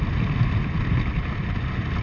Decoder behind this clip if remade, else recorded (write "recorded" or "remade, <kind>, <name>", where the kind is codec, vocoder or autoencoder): recorded